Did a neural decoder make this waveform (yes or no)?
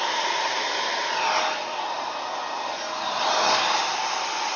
no